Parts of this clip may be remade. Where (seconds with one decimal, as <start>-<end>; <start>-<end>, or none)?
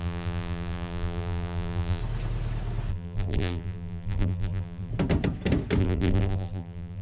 0.0-2.0; 2.9-4.9; 5.8-7.0